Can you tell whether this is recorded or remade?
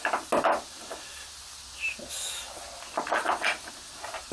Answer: recorded